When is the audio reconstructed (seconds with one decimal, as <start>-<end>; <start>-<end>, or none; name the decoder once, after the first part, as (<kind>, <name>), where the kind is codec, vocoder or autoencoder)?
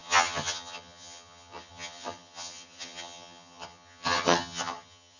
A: 0.0-5.2 (vocoder, HiFi-GAN)